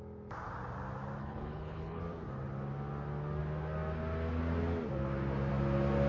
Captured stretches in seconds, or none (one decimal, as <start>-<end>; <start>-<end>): 0.0-1.2; 2.0-6.1